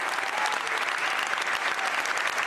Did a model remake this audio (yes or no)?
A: no